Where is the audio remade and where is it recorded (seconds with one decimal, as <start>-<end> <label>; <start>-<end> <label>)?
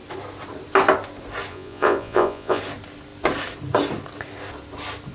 0.0-1.5 recorded; 1.5-2.6 remade; 2.6-5.1 recorded